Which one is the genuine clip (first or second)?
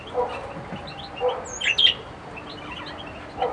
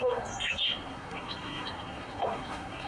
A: first